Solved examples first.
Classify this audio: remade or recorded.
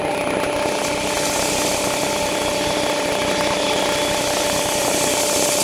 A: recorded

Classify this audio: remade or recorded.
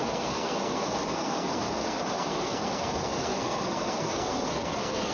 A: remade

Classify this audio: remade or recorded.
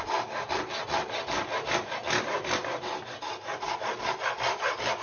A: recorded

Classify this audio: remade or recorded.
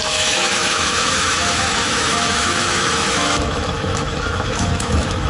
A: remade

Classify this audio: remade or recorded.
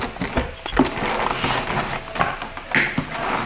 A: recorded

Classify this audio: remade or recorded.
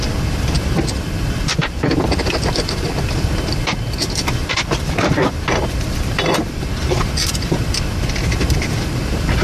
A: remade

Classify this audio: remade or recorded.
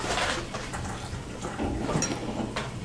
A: recorded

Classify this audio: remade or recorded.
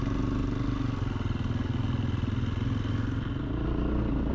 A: recorded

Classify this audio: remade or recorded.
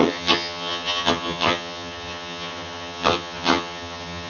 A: remade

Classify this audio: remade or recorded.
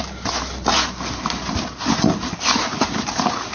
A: recorded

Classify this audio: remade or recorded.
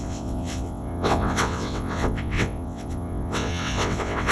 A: remade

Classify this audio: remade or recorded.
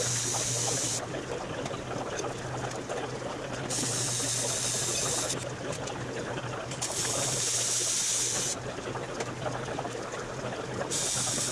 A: recorded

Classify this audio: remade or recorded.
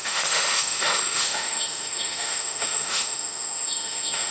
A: remade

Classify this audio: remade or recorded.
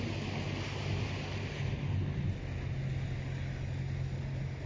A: recorded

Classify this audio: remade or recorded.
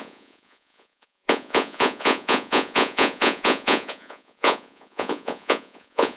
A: remade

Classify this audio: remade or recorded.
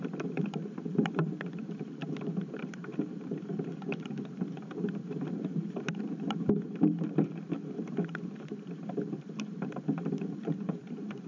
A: remade